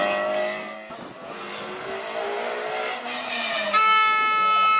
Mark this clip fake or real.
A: real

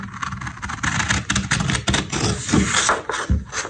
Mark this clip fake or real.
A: real